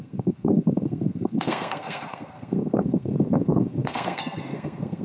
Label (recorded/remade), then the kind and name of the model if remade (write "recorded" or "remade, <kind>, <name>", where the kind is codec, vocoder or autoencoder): remade, codec, SNAC